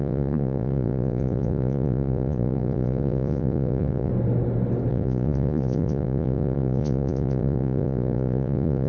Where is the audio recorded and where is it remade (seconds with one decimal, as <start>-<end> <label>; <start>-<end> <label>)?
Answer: 0.0-4.1 remade; 4.1-4.9 recorded; 4.9-8.9 remade